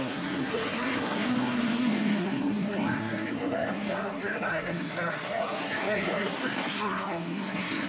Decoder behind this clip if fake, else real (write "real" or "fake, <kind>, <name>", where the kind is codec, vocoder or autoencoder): fake, codec, SNAC